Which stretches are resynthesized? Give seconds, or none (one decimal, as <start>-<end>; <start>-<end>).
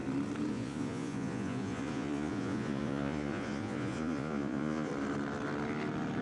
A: 0.5-4.9